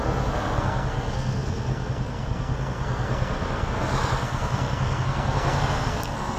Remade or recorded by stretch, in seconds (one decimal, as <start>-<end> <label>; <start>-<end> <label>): 0.0-6.4 remade